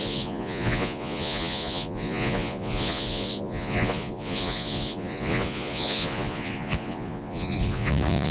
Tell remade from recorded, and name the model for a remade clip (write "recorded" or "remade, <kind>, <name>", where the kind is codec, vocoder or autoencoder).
remade, vocoder, Vocos